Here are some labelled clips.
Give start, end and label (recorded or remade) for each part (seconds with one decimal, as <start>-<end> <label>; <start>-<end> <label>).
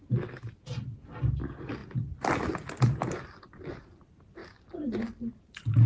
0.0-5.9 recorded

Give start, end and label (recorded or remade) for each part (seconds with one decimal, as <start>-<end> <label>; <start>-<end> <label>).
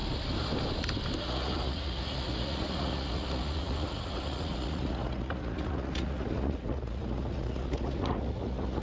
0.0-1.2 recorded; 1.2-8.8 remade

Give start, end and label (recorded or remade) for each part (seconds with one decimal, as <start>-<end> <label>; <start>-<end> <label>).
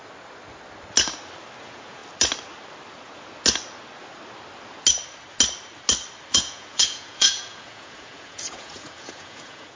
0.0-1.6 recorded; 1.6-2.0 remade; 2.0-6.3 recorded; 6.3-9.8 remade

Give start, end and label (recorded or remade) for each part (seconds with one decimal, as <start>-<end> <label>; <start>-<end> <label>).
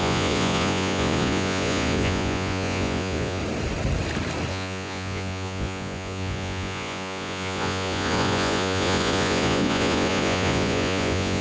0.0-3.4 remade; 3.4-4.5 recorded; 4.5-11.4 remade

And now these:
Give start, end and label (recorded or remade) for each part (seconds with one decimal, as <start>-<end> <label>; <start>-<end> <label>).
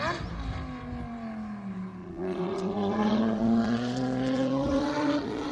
0.0-2.0 recorded; 2.0-5.5 remade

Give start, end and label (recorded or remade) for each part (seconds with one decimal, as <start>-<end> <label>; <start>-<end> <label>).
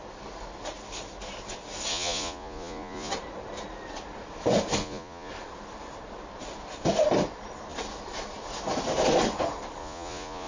0.0-1.9 recorded; 1.9-3.1 remade; 3.1-4.8 recorded; 4.8-5.3 remade; 5.3-9.8 recorded; 9.8-10.5 remade